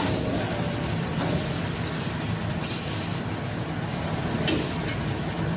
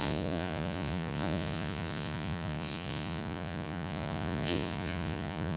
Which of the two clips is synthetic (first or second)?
second